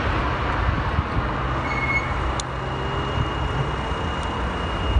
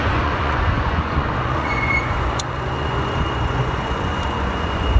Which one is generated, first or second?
second